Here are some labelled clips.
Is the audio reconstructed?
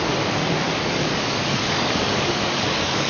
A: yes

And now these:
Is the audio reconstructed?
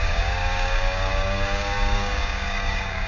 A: yes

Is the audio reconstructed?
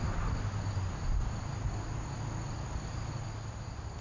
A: no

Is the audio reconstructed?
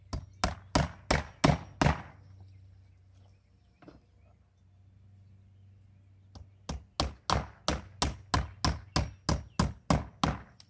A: no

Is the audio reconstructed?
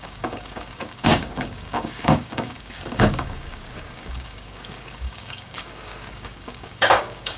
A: yes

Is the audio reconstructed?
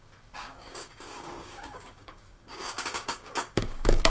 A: yes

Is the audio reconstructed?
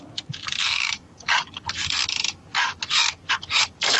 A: yes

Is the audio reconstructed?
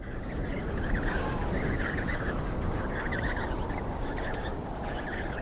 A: yes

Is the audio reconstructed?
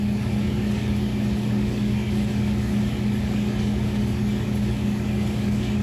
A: yes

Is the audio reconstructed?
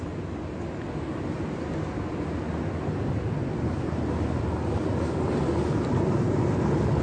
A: no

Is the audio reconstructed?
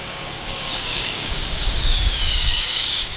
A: yes